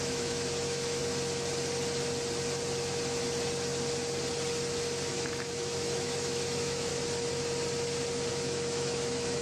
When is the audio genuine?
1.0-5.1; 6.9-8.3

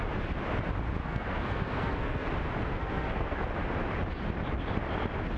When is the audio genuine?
0.0-1.0; 2.3-2.7; 3.4-5.4

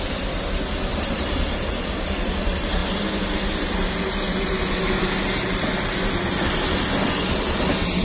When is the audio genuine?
0.0-0.9; 2.4-8.0

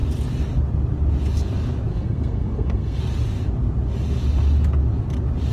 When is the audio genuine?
0.0-1.9; 3.0-5.5